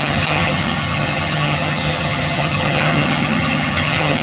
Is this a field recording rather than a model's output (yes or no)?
no